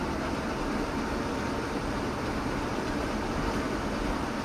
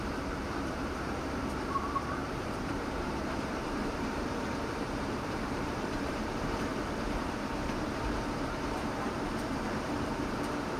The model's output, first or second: second